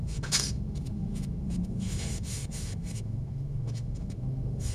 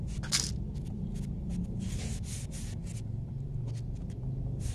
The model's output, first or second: first